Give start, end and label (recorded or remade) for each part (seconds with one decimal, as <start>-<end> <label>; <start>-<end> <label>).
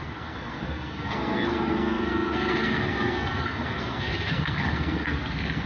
0.0-5.7 remade